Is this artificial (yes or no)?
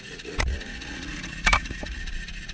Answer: yes